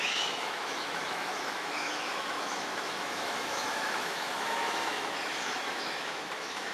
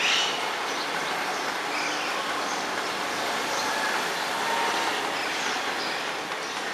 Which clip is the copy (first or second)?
first